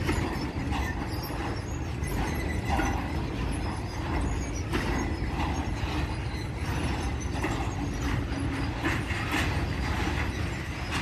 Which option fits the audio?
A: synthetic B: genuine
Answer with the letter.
B